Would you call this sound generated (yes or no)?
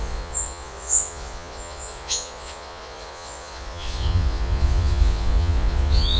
yes